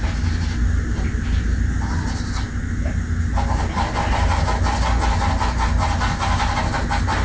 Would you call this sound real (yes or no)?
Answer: yes